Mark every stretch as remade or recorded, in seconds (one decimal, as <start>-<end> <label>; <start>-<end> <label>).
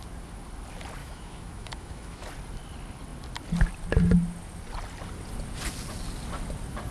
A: 0.0-1.0 recorded; 1.0-2.3 remade; 2.3-6.9 recorded